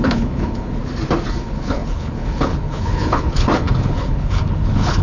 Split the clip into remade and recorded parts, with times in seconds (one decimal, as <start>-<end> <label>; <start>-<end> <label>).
0.0-0.8 remade; 0.8-1.4 recorded; 1.4-5.0 remade